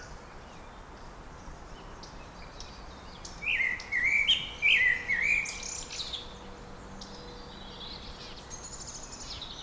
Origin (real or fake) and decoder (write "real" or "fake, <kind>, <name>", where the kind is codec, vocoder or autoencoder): real